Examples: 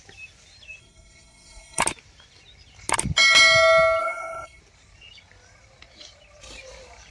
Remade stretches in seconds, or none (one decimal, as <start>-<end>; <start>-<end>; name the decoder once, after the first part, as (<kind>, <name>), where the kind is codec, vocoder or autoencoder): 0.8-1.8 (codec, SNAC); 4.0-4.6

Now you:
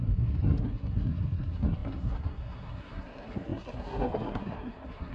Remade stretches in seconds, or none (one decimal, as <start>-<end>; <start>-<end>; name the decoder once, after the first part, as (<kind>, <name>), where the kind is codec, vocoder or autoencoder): 0.0-5.1 (codec, SNAC)

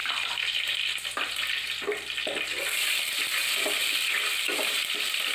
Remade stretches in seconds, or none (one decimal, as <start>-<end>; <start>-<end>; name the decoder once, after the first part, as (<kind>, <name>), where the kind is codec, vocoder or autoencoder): none

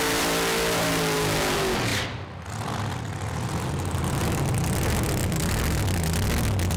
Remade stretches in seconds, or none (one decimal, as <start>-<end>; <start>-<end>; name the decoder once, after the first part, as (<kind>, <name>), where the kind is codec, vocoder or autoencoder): none